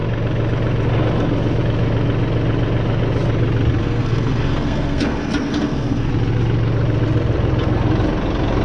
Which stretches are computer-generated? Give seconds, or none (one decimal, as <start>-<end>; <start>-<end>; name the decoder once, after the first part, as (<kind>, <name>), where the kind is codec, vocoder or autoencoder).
3.8-6.1 (codec, SNAC)